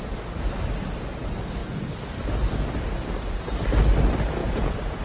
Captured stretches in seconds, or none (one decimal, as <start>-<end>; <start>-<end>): 0.0-4.4